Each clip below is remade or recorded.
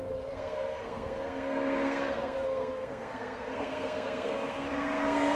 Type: remade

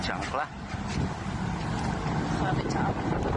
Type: recorded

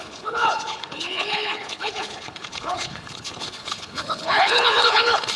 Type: remade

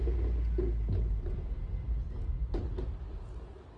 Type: recorded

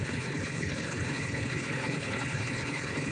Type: remade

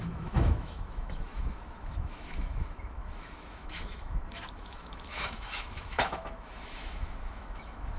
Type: remade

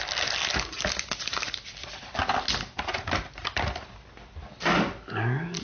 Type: recorded